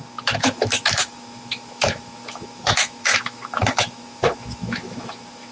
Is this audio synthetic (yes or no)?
yes